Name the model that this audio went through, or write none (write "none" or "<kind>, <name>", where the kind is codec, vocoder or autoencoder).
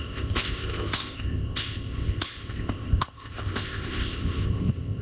codec, ZipCodec